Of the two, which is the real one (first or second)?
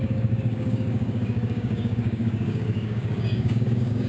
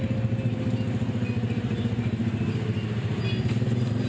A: second